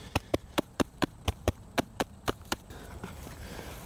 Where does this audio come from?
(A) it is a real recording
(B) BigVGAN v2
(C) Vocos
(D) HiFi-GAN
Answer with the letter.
B